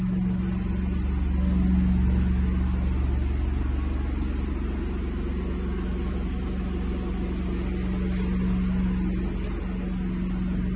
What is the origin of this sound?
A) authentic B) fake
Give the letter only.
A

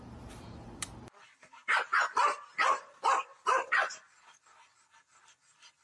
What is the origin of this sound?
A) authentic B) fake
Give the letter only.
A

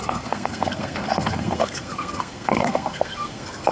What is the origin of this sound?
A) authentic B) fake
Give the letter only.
B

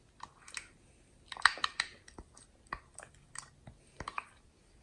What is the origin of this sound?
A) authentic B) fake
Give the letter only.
A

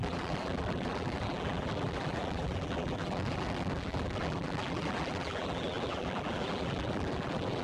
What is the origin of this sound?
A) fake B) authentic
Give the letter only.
A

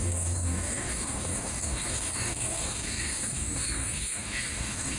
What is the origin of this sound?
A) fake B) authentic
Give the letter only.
A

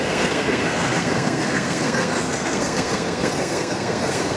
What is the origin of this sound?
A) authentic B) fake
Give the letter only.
B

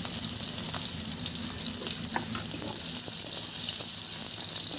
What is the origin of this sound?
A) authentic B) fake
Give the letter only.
A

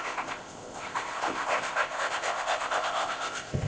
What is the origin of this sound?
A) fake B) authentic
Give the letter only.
A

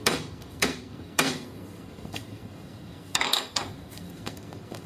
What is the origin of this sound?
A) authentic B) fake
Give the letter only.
B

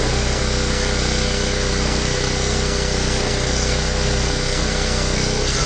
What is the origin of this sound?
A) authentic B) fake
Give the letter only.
B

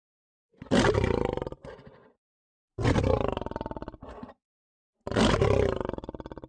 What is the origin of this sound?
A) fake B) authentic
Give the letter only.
B